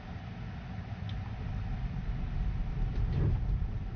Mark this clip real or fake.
real